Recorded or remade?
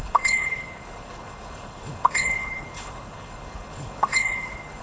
remade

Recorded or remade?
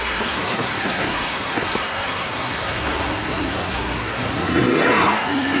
remade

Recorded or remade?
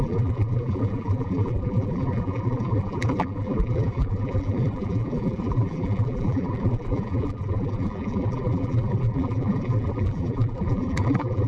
remade